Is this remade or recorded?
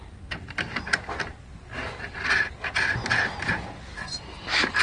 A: recorded